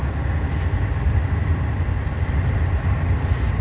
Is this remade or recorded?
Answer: recorded